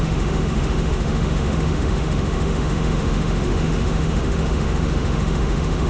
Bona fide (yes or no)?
no